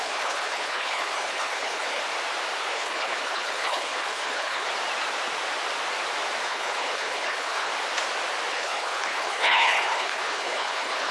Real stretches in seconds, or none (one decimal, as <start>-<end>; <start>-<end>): 2.0-2.6; 4.7-6.4; 7.7-8.5